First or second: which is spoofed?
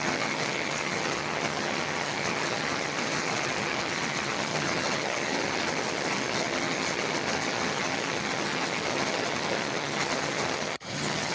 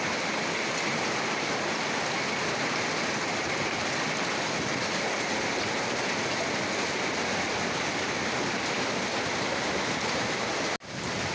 first